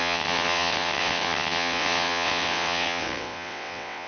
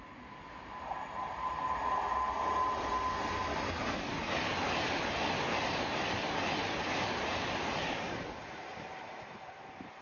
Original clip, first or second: second